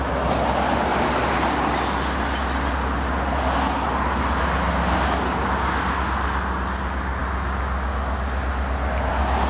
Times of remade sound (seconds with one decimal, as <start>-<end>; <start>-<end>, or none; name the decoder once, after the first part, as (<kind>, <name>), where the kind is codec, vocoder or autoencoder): none